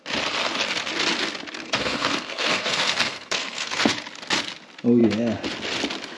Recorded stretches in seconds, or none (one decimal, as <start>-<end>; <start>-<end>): 0.0-1.6; 3.9-6.2